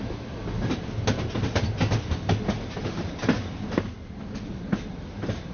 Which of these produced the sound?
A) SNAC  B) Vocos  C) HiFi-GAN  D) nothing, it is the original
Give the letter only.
D